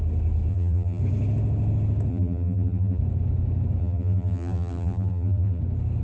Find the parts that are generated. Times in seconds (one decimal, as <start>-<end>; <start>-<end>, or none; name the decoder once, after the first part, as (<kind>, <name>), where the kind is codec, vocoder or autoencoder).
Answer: 0.5-1.0 (vocoder, BigVGAN v2); 2.1-3.0; 3.8-5.6

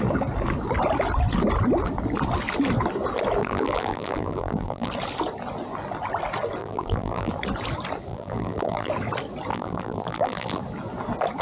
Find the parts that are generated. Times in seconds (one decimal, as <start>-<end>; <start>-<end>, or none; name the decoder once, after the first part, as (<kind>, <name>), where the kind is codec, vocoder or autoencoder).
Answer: 3.4-4.9 (vocoder, BigVGAN v2); 6.6-7.3; 8.1-8.9; 9.5-10.6

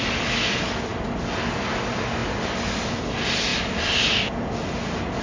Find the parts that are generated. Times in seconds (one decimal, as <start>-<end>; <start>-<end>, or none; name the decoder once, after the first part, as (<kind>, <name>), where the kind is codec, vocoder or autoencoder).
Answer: none

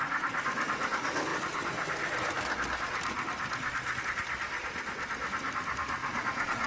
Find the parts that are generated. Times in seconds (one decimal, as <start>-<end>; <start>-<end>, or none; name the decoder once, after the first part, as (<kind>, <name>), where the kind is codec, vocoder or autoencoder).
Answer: 6.0-6.7 (vocoder, Vocos)

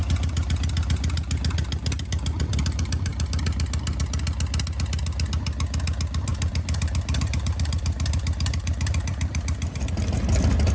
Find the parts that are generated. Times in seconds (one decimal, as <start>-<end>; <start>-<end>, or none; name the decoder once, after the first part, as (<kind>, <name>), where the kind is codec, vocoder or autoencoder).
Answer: 6.3-9.8 (vocoder, BigVGAN v2)

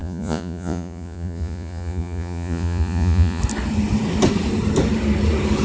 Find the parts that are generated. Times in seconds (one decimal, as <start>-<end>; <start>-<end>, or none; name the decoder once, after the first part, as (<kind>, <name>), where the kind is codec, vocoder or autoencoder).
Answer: 0.0-3.4 (vocoder, Vocos)